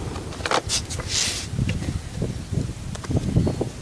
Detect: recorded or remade recorded